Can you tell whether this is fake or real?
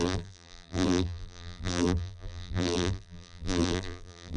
fake